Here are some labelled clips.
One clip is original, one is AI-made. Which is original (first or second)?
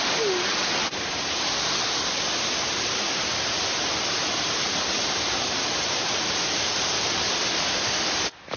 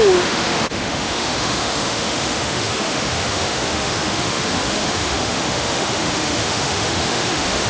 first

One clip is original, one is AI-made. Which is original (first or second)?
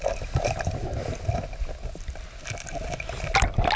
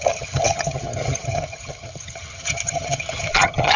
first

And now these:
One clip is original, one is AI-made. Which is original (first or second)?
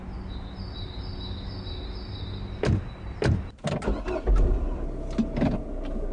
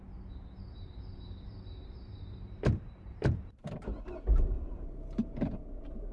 first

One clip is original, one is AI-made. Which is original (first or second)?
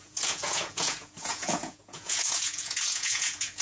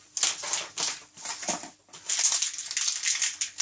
second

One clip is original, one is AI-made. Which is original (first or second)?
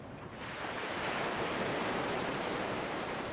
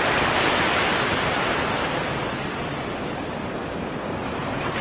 second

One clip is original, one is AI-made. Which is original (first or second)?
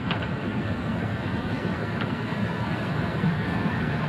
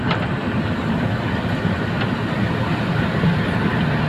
second